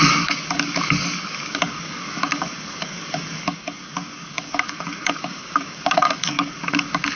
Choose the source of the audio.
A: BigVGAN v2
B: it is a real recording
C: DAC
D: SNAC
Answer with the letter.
C